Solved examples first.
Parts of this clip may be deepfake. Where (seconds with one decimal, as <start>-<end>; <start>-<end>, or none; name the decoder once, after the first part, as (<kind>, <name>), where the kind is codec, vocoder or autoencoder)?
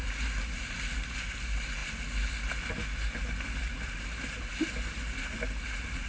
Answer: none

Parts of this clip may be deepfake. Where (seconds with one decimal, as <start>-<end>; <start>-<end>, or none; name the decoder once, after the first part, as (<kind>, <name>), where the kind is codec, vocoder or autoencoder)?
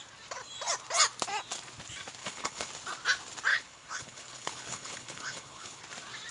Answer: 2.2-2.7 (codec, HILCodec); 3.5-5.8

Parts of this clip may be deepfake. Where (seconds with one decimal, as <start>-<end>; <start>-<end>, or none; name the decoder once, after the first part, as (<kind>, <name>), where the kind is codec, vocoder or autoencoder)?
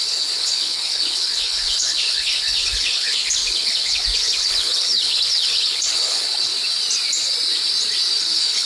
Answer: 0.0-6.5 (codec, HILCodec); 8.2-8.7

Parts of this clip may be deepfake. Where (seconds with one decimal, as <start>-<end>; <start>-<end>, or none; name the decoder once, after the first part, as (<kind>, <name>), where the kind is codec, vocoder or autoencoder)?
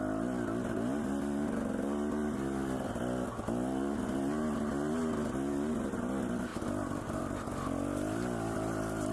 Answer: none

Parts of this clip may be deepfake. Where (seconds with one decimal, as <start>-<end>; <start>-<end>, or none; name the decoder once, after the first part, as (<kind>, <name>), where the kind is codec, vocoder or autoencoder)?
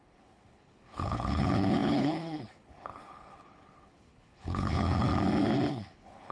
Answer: 0.0-5.1 (codec, HILCodec); 5.7-6.3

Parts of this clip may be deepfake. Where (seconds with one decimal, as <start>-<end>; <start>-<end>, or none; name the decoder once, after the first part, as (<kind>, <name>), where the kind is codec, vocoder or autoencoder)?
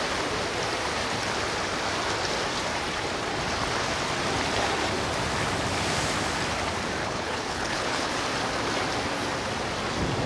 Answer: 7.0-8.1 (codec, HILCodec)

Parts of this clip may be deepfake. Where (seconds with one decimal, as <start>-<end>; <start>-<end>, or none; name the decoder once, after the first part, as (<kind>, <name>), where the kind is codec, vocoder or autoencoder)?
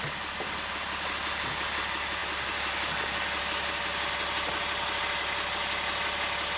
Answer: none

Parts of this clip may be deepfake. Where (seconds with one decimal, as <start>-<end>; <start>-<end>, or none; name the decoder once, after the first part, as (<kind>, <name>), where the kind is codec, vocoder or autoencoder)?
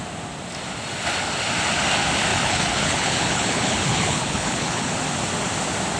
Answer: 2.3-4.9 (codec, HILCodec)